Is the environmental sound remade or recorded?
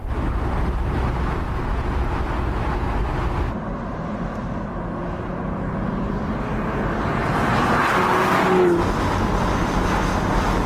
recorded